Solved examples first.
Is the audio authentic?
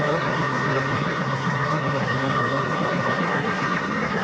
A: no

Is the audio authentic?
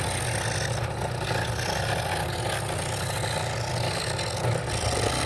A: yes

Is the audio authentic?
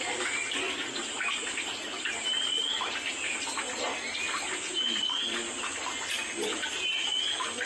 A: yes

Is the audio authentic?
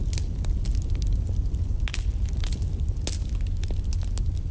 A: yes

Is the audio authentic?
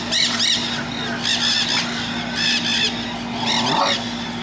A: yes